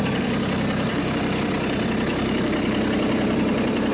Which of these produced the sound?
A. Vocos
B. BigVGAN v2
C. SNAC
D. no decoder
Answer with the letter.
B